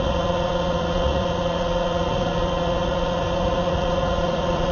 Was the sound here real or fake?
fake